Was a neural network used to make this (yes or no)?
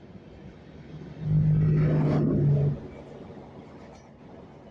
no